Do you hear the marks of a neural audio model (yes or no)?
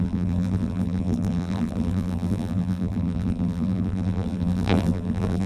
yes